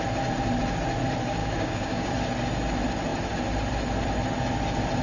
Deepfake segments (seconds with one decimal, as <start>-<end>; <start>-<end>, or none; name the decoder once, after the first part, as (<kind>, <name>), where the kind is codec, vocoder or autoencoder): 1.4-2.1 (codec, DAC)